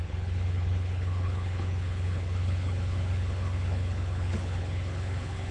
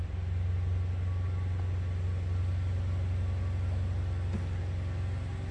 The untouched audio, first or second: second